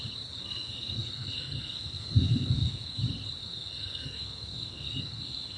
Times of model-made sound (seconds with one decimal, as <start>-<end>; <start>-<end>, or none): 0.4-3.0; 3.4-5.6